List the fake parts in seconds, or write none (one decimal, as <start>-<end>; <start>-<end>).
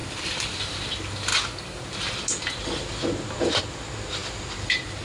0.0-0.6; 4.2-5.0